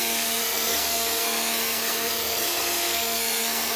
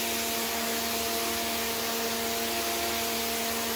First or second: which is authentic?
second